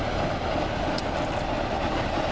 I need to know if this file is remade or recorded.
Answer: recorded